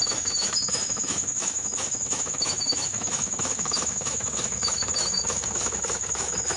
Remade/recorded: remade